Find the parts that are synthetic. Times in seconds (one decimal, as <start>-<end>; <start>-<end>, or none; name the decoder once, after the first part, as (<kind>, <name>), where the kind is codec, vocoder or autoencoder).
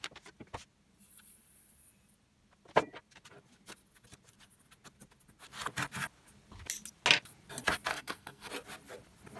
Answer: 7.9-8.5 (codec, SNAC)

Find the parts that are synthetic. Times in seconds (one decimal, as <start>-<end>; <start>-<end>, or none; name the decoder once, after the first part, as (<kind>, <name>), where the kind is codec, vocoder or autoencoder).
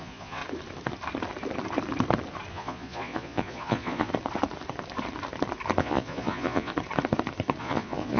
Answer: 0.0-0.4 (vocoder, Vocos); 2.5-4.1; 5.8-6.7; 7.6-8.2